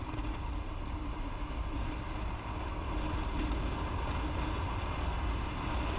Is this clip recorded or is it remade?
recorded